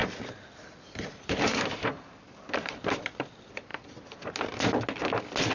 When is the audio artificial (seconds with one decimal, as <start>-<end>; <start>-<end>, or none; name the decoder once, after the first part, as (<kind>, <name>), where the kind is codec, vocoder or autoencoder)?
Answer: 0.0-3.3 (vocoder, BigVGAN v2); 3.7-4.3